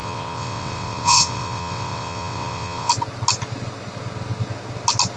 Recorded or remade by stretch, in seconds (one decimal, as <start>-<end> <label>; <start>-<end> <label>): 0.0-2.9 remade; 2.9-5.2 recorded